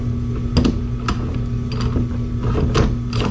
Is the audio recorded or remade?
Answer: recorded